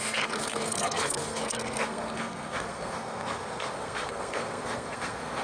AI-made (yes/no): yes